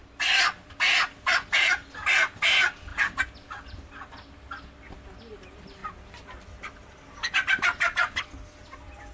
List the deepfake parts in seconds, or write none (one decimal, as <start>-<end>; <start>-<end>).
none